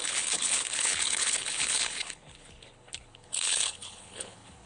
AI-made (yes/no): yes